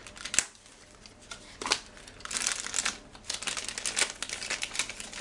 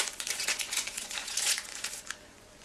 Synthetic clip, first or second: second